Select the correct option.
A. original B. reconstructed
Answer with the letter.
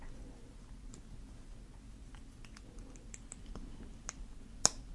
A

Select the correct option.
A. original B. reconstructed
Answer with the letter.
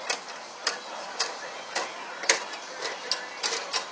A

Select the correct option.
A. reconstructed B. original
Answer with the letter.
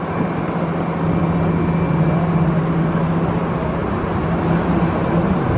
B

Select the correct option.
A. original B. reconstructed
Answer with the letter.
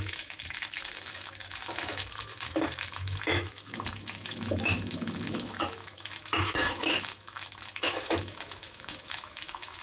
B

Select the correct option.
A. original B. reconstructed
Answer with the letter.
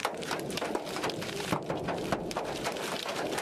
A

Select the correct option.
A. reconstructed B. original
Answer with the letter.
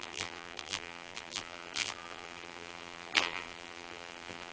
A